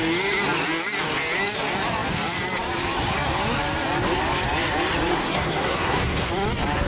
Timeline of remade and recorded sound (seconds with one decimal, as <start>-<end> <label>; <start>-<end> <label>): 0.0-5.1 recorded; 5.1-6.3 remade; 6.3-6.9 recorded